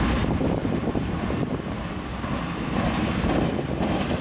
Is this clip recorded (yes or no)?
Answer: yes